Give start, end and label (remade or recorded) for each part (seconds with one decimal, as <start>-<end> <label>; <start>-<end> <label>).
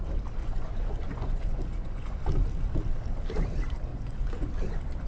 0.0-0.4 recorded; 0.4-2.2 remade; 2.2-3.9 recorded; 3.9-4.5 remade; 4.5-5.1 recorded